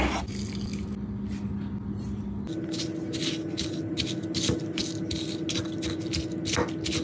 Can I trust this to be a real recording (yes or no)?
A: yes